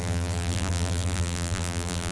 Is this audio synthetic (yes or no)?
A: yes